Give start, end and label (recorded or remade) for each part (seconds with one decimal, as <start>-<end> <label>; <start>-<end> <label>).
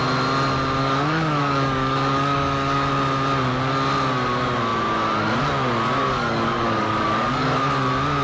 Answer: 0.0-0.8 recorded; 0.8-2.9 remade; 2.9-6.0 recorded; 6.0-7.6 remade; 7.6-8.2 recorded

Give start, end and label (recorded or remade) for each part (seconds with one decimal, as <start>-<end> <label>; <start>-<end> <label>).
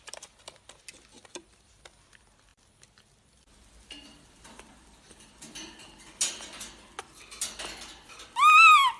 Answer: 0.0-9.0 recorded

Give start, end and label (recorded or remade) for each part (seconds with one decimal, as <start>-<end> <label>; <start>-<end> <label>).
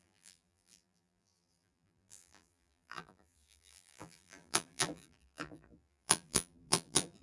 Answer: 0.0-7.2 remade